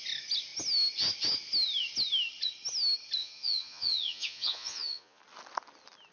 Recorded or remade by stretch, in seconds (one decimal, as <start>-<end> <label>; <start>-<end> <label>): 0.0-3.2 recorded; 3.2-5.2 remade; 5.2-6.1 recorded